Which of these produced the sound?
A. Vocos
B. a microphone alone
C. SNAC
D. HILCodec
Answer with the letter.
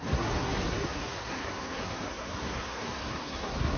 C